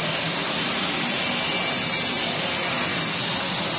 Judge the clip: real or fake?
real